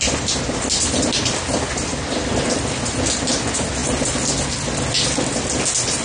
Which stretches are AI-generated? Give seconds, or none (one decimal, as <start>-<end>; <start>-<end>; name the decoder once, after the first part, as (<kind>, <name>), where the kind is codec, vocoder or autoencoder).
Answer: none